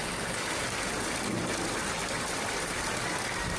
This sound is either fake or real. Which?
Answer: fake